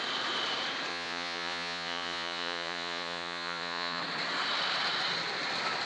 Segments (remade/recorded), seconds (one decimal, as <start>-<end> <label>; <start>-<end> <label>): 0.0-0.9 recorded; 0.9-4.0 remade; 4.0-5.9 recorded